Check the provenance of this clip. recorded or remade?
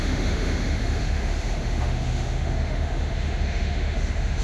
remade